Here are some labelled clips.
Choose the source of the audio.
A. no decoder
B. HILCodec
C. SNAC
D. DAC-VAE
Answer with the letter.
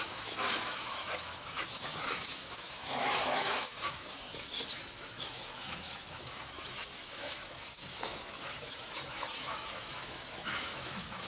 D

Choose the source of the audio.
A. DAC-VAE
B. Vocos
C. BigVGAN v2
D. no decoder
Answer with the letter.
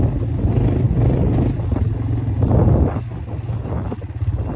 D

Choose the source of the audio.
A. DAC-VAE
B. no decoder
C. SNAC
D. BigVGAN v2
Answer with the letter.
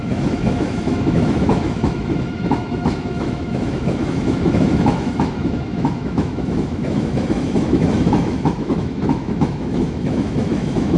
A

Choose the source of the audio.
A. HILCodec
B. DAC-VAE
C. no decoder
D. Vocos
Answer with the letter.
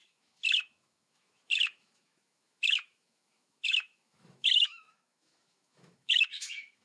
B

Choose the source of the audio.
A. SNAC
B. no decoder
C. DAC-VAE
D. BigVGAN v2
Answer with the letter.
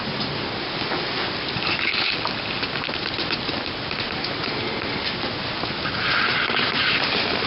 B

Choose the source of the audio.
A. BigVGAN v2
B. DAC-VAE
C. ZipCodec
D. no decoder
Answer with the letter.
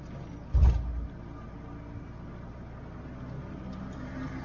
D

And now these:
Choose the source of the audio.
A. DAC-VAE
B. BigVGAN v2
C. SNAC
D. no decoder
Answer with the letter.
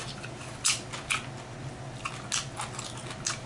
D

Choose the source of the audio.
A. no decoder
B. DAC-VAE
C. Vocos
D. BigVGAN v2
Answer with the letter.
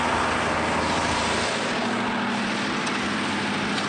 A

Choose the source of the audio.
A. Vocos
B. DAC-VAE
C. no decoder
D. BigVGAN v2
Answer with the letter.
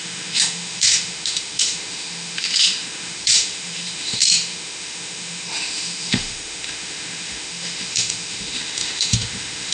B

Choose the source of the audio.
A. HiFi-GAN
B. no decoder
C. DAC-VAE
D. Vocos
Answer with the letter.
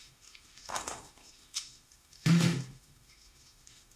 C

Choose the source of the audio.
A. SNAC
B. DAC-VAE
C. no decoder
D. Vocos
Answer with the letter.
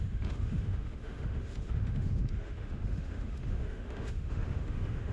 B